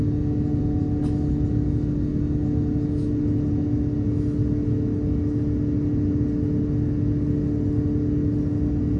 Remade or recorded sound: recorded